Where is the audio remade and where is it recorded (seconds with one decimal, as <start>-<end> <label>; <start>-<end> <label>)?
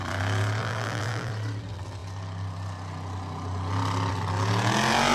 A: 0.0-0.6 recorded; 0.6-1.3 remade; 1.3-5.1 recorded